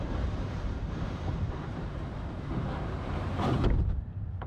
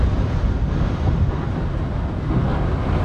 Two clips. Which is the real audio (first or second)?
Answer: second